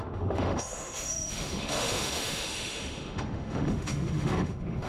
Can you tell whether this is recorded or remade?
remade